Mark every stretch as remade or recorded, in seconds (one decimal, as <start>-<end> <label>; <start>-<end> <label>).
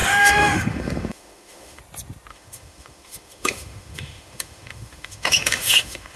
0.0-1.8 remade; 1.8-2.3 recorded; 2.3-6.2 remade